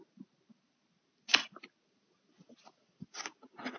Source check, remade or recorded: recorded